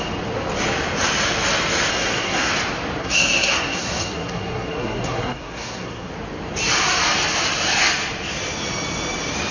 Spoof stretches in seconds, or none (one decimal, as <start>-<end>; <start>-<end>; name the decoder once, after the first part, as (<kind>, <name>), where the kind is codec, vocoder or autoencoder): 1.9-2.5 (codec, SNAC); 3.0-6.1